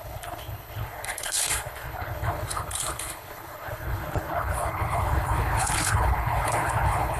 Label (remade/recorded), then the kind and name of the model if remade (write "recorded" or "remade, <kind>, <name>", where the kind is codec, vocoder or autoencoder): remade, codec, HILCodec